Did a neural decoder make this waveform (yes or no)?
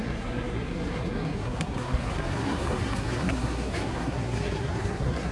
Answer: yes